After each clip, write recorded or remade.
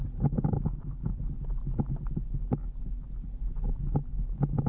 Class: recorded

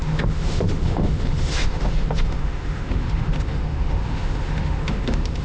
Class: remade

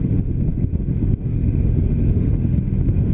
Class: remade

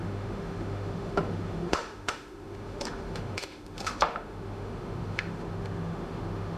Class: remade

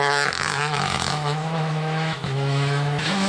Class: remade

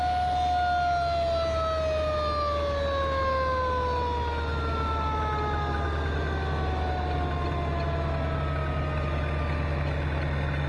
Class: recorded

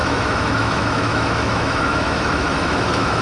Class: remade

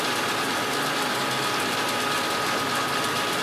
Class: recorded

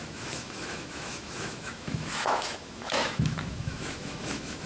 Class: remade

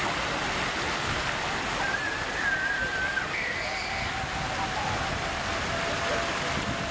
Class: recorded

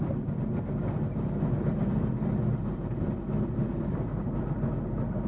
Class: recorded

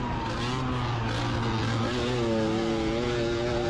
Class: recorded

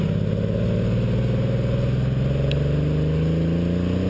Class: recorded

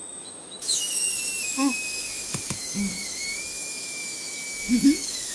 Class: remade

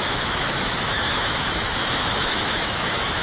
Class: remade